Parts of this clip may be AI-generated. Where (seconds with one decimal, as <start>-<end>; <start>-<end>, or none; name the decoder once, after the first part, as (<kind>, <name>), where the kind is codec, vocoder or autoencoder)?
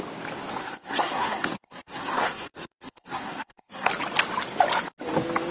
0.6-3.9 (codec, SNAC)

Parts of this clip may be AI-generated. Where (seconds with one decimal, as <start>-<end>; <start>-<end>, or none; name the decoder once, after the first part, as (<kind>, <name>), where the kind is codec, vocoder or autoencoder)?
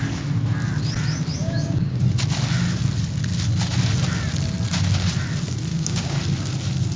1.4-2.0 (codec, DAC); 5.7-6.2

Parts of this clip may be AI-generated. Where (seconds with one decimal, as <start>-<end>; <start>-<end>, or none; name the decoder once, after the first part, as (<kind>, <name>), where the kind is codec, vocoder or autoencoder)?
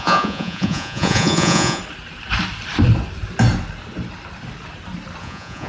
0.0-1.8 (vocoder, Vocos); 5.2-5.7